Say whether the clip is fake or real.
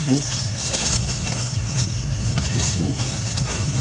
fake